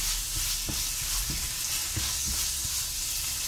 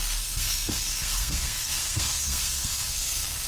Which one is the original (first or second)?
first